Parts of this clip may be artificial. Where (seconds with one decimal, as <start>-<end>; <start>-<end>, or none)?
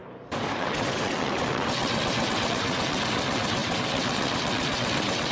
0.6-5.3